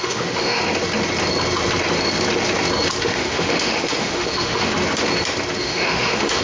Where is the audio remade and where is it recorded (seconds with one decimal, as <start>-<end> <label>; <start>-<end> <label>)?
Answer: 0.0-0.6 remade; 0.6-3.0 recorded; 3.0-4.7 remade; 4.7-5.6 recorded; 5.6-6.4 remade